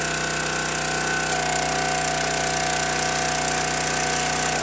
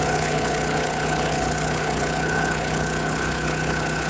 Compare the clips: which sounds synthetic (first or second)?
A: second